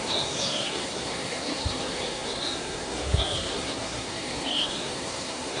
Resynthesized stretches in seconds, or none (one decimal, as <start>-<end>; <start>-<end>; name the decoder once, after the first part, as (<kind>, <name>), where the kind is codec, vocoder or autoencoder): 0.0-5.6 (codec, SNAC)